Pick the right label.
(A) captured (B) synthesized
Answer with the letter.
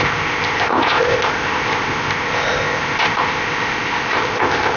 B